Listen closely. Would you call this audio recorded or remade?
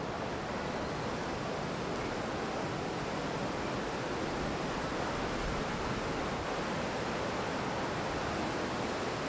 recorded